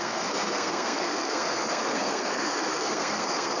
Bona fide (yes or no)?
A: no